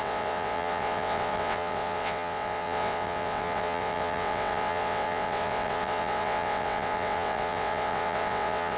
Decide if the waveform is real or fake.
fake